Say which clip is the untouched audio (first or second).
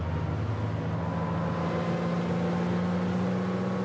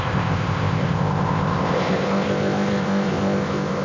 first